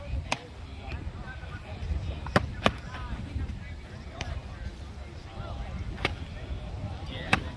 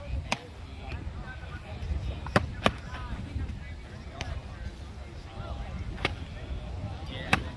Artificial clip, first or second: first